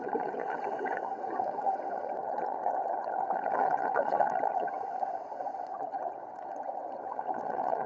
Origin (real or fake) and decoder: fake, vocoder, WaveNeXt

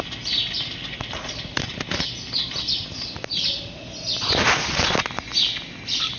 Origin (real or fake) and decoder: real